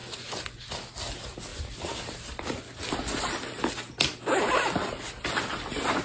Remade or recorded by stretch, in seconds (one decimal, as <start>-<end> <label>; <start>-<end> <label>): 0.0-0.6 remade; 0.6-6.0 recorded